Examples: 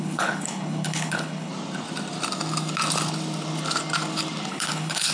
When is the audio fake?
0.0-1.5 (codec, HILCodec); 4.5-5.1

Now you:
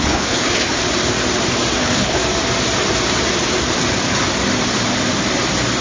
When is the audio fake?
0.0-0.8 (codec, HILCodec); 1.8-2.2

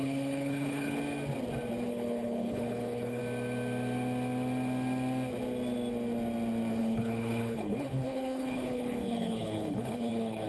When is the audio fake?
0.0-1.0 (codec, HILCodec); 1.9-3.2; 6.8-10.5

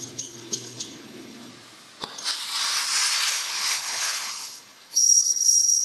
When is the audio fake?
0.0-1.5 (codec, HILCodec); 3.3-5.8

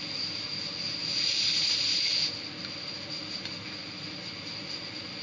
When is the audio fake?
none

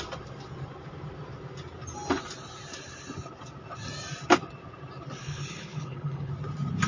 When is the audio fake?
5.2-6.3 (codec, HILCodec)